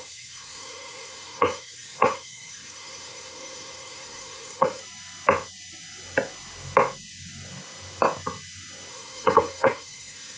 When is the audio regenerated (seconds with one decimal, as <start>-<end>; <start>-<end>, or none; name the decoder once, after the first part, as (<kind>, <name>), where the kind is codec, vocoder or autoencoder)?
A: 0.0-4.8 (codec, SNAC); 8.9-10.4